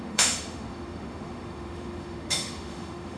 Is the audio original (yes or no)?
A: no